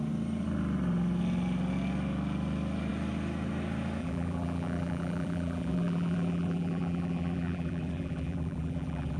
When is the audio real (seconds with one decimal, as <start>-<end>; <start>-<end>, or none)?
0.0-4.0